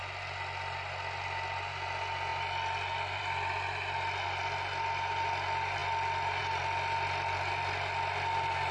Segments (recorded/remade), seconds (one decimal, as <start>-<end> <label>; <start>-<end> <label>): 0.0-8.7 recorded